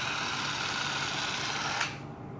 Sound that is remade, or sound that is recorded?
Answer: recorded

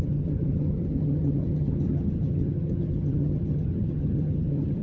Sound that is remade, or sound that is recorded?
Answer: remade